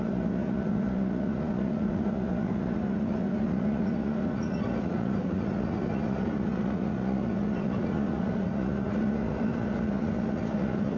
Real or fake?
fake